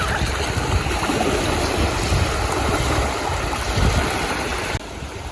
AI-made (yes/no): no